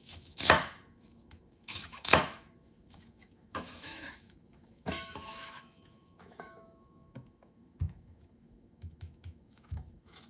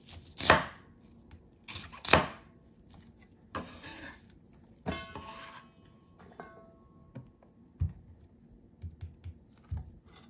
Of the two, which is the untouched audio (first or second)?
second